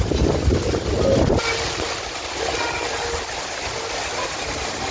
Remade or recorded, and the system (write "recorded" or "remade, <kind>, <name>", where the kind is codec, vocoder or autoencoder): recorded